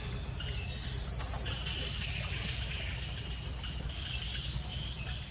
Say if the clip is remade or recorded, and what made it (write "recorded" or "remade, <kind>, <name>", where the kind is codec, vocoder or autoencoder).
recorded